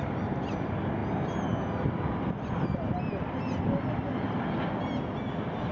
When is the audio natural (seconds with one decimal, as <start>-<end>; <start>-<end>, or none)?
0.0-5.7